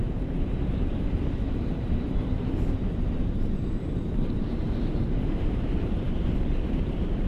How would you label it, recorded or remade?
remade